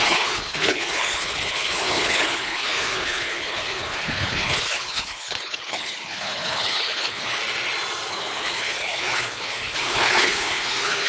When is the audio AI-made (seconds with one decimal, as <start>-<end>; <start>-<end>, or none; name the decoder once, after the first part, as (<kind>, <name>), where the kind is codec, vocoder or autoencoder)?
0.0-7.4 (codec, HILCodec); 8.1-11.1